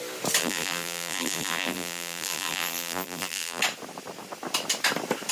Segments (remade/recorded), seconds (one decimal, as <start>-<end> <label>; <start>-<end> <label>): 0.0-0.4 recorded; 0.4-3.6 remade; 3.6-5.3 recorded